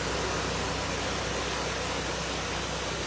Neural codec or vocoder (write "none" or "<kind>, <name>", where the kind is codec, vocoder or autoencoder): none